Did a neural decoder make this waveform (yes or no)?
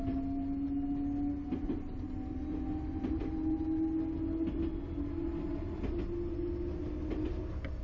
no